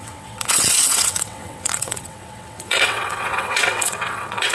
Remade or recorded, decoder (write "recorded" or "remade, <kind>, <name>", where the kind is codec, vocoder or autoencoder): remade, vocoder, WaveNeXt